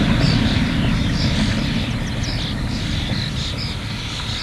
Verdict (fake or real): real